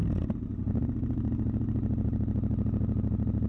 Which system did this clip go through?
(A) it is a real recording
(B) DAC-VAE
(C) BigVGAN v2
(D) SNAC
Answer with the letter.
A